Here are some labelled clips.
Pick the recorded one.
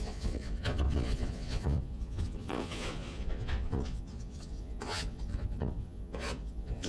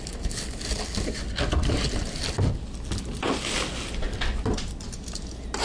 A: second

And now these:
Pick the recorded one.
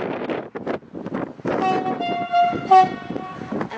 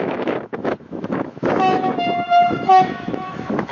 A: first